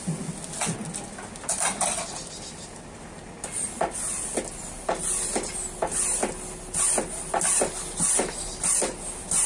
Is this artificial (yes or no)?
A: no